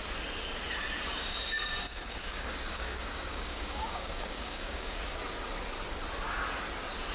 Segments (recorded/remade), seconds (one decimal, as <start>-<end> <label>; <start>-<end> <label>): 0.0-1.2 recorded; 1.2-5.2 remade; 5.2-7.1 recorded